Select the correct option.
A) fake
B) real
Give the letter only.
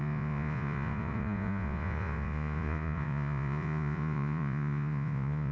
A